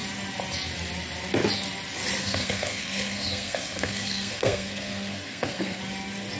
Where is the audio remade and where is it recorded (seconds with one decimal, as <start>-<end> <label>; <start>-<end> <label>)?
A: 0.0-2.2 recorded; 2.2-5.8 remade; 5.8-6.4 recorded